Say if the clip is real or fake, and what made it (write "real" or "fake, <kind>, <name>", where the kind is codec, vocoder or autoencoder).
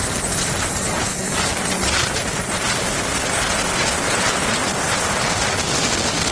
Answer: real